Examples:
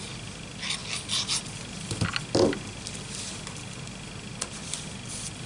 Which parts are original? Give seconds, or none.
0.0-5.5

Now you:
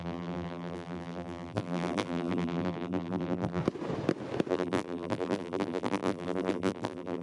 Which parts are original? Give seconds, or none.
3.6-4.5

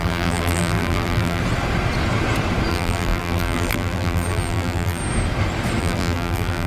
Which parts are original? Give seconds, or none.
1.4-2.7; 5.0-5.8

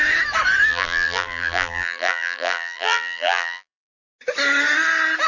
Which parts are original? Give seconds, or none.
0.0-0.7; 3.9-5.3

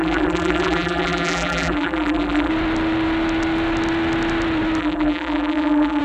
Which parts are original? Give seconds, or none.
2.5-4.8

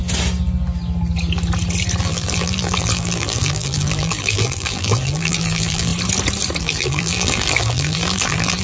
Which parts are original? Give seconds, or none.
0.0-2.0; 5.9-6.6